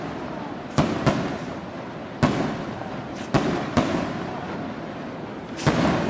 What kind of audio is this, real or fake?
real